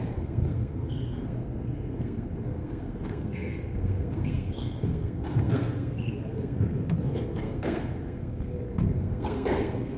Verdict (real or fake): fake